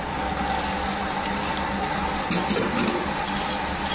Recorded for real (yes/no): yes